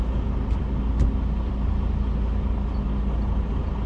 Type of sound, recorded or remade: recorded